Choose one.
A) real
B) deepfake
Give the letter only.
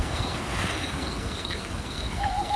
B